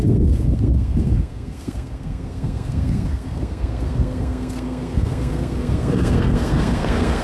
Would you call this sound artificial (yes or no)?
yes